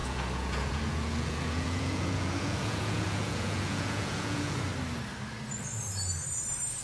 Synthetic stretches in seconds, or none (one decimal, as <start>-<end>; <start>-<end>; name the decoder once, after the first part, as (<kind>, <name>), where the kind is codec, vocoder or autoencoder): 0.0-4.7 (vocoder, Vocos)